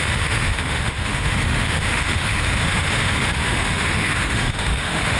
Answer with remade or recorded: remade